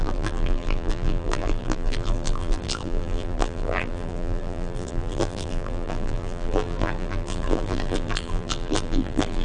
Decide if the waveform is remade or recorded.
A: remade